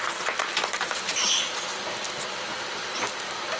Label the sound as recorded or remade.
recorded